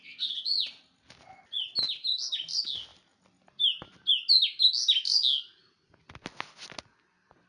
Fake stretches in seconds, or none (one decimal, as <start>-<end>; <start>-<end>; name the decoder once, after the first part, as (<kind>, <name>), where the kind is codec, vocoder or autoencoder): none

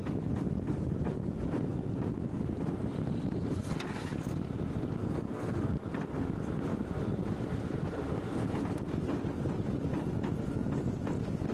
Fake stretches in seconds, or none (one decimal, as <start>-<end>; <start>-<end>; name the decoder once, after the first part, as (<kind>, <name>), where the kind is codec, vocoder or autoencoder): 5.0-5.7 (codec, SNAC)

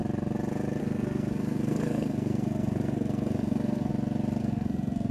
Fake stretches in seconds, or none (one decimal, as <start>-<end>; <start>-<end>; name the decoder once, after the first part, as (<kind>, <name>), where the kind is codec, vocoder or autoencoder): 0.8-3.9 (codec, SNAC); 4.4-5.1

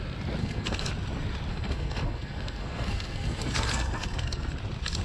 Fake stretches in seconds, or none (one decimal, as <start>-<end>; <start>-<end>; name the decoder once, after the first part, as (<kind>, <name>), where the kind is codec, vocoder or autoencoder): 0.4-0.9 (codec, SNAC); 1.5-4.5

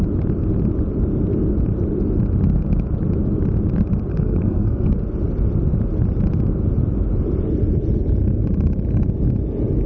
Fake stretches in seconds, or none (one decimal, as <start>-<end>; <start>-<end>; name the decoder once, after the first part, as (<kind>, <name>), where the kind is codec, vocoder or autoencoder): 4.1-5.0 (codec, SNAC)

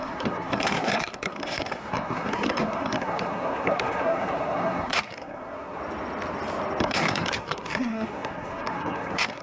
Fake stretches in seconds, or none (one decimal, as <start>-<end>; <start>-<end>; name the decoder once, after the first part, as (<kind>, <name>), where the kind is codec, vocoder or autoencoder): 0.0-5.8 (codec, SNAC); 6.8-9.4

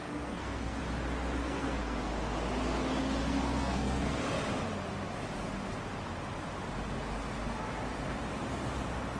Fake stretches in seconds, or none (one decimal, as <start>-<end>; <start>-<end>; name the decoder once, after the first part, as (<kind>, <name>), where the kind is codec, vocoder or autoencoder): 0.0-0.8 (codec, SNAC); 1.4-2.1; 3.2-4.2